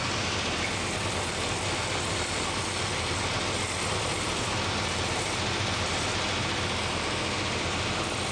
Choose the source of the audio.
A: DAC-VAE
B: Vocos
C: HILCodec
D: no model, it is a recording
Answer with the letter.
D